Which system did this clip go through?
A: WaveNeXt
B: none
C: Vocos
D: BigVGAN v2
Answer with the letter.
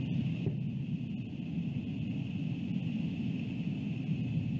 B